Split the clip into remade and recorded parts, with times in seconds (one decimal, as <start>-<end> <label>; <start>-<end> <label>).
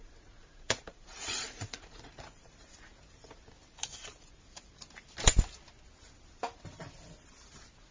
0.0-2.5 remade; 2.5-7.9 recorded